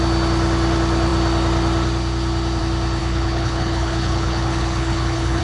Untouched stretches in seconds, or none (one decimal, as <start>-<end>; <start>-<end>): 0.0-3.0